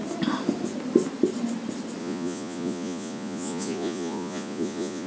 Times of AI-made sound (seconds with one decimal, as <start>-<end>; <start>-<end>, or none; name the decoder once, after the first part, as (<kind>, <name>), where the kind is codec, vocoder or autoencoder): 2.0-5.1 (vocoder, Vocos)